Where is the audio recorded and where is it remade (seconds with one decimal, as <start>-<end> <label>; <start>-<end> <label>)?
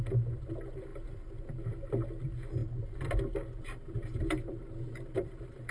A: 0.0-2.6 remade; 2.6-3.6 recorded; 3.6-5.7 remade